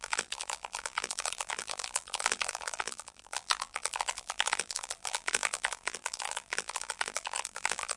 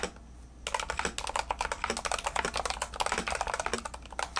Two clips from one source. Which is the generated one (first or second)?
first